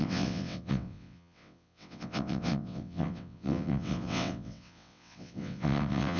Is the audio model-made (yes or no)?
yes